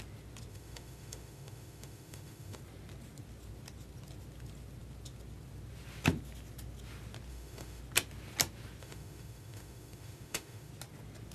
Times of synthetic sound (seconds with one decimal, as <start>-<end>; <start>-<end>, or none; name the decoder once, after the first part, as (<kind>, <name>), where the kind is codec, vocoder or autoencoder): 0.5-2.6 (autoencoder, DAC-VAE); 7.3-7.8; 8.8-10.7